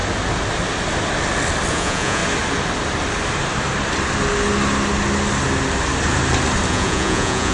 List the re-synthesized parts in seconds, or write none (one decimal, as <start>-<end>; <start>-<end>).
1.7-2.2; 6.7-7.5